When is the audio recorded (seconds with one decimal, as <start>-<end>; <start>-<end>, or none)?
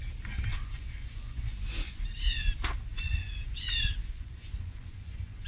0.0-0.5; 2.0-2.9